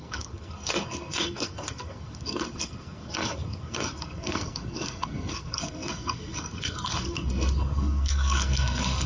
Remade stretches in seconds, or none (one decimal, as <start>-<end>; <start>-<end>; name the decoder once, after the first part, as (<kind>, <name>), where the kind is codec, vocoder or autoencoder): 0.0-9.1 (codec, SNAC)